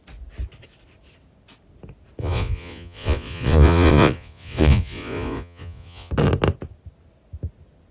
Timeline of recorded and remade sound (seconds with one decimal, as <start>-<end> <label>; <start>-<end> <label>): 0.0-2.2 recorded; 2.2-6.1 remade; 6.1-7.9 recorded